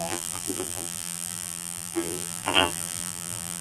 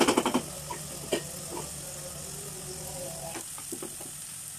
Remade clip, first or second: first